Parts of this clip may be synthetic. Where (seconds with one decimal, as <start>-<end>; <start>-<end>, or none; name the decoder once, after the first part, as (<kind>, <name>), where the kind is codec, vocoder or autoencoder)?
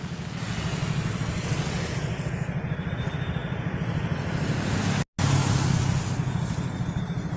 3.4-4.8 (vocoder, BigVGAN v2)